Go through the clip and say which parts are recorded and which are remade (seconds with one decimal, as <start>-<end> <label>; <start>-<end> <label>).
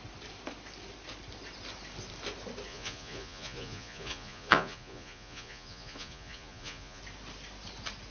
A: 0.0-2.7 recorded; 2.7-7.0 remade; 7.0-8.1 recorded